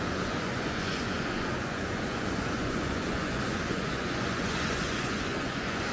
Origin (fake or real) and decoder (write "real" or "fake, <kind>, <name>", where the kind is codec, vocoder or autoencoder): fake, vocoder, Vocos